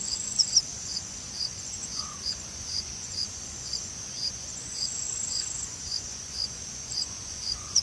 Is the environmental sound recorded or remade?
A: remade